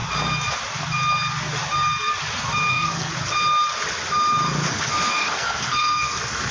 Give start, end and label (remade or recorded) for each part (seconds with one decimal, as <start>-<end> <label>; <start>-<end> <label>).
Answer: 0.0-2.7 recorded; 2.7-3.1 remade; 3.1-4.7 recorded; 4.7-6.5 remade

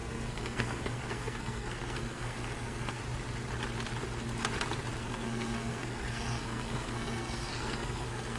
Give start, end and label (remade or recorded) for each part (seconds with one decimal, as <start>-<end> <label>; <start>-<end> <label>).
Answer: 0.0-3.0 remade; 3.0-5.0 recorded; 5.0-8.4 remade